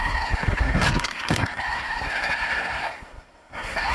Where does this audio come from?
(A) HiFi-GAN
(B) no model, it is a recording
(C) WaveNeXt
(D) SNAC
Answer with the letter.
D